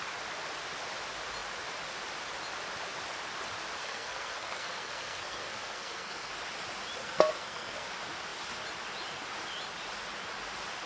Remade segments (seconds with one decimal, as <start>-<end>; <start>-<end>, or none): 3.8-6.3; 7.0-7.9